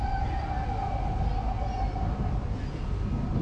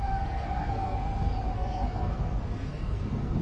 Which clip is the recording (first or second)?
first